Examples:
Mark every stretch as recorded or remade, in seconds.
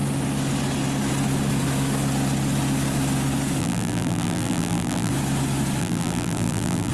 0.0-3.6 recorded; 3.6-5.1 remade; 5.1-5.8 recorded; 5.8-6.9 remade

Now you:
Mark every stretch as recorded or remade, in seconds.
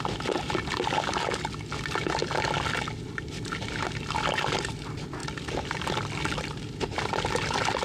0.0-2.2 recorded; 2.2-2.7 remade; 2.7-5.2 recorded; 5.2-6.1 remade; 6.1-7.8 recorded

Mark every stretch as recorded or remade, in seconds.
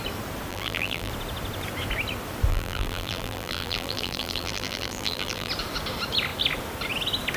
0.0-0.5 recorded; 0.5-1.1 remade; 1.1-2.5 recorded; 2.5-5.5 remade; 5.5-7.4 recorded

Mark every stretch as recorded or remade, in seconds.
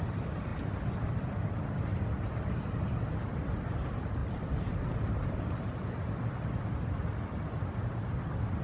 0.0-0.5 remade; 0.5-1.1 recorded; 1.1-4.2 remade; 4.2-4.9 recorded; 4.9-8.6 remade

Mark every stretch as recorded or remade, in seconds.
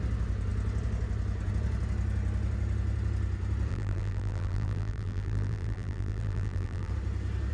0.0-3.7 recorded; 3.7-6.9 remade; 6.9-7.5 recorded